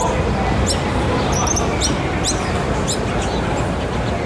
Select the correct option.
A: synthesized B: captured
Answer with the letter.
B